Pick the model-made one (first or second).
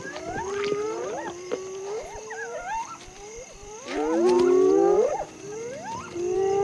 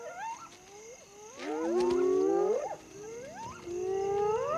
first